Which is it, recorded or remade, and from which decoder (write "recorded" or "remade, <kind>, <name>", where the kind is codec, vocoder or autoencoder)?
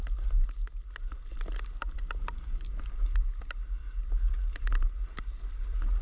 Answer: recorded